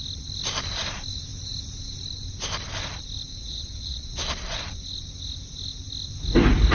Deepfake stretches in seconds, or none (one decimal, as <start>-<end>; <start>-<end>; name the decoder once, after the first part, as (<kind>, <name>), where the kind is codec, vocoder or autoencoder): 3.3-4.6 (vocoder, Vocos)